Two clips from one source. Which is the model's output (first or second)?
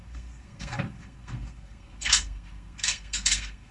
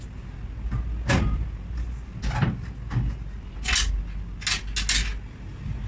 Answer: first